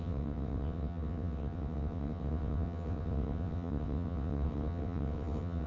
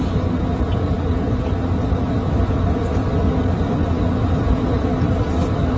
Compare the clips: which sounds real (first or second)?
second